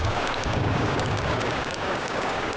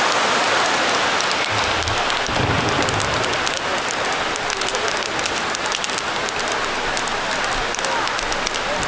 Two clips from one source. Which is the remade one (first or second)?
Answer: first